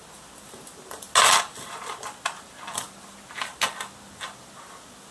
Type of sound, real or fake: real